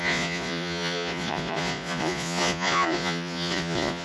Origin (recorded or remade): remade